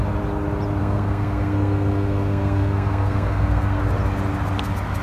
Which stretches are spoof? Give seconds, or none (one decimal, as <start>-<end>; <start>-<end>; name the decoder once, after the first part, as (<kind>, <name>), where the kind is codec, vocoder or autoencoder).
0.8-3.8 (codec, SNAC)